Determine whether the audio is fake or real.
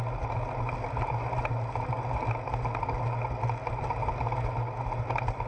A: real